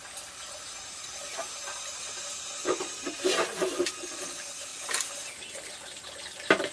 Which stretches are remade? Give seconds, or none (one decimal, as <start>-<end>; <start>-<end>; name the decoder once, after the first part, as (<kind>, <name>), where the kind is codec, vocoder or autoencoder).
none